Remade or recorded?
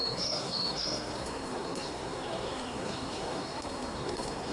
remade